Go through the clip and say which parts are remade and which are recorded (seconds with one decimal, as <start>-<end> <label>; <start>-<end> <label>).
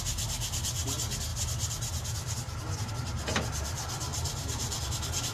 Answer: 0.0-4.1 recorded; 4.1-4.8 remade; 4.8-5.3 recorded